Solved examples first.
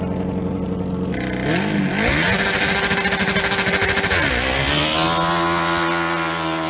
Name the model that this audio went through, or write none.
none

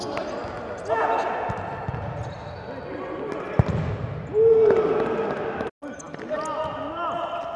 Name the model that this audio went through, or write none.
none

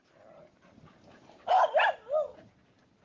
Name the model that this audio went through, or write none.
none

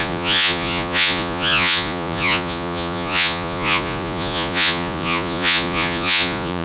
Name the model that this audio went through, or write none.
vocoder, Vocos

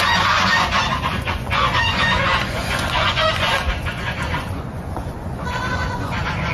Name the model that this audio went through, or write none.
vocoder, Vocos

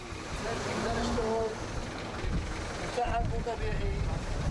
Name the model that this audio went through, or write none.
none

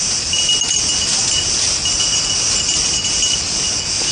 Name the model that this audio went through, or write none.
none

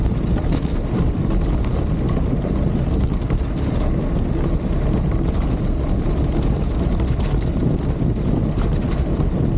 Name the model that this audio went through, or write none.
none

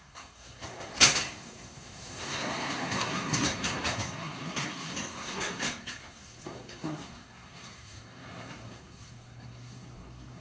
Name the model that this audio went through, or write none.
codec, SNAC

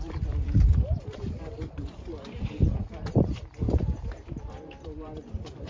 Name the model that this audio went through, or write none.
vocoder, BigVGAN v2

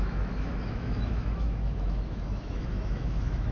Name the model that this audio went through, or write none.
autoencoder, DAC-VAE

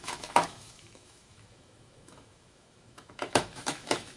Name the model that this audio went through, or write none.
autoencoder, DAC-VAE